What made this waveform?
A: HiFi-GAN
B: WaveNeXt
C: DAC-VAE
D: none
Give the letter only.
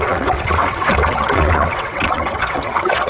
B